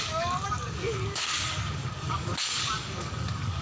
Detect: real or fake fake